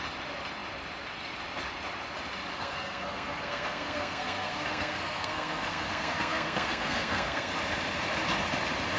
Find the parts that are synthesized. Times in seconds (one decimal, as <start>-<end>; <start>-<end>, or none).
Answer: 2.5-7.5